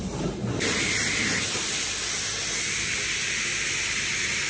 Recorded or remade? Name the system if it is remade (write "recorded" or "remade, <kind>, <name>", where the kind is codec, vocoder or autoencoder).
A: recorded